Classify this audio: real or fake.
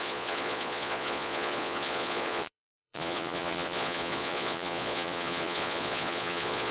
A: fake